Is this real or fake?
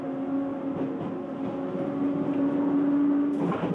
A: real